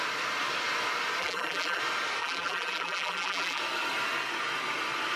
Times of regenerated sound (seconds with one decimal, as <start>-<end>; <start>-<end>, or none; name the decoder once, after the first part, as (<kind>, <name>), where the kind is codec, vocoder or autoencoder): 1.2-1.8 (vocoder, BigVGAN v2); 2.2-3.6